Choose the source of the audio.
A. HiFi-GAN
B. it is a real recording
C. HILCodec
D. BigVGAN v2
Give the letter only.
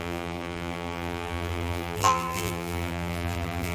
D